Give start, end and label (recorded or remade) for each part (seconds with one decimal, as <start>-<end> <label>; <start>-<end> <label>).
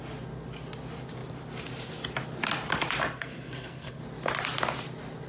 0.0-3.1 recorded; 3.1-4.0 remade; 4.0-5.3 recorded